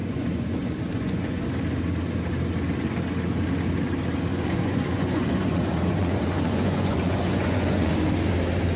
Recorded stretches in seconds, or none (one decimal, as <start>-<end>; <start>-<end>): 1.4-4.3; 7.9-8.8